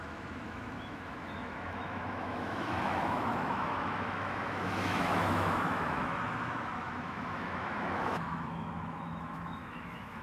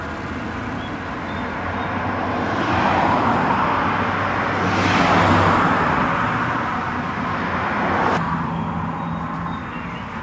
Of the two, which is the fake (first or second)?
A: first